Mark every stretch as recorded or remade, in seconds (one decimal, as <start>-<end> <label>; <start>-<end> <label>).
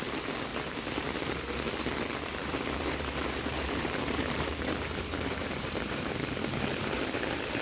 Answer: 0.0-0.5 recorded; 0.5-1.4 remade; 1.4-2.4 recorded; 2.4-6.1 remade; 6.1-7.6 recorded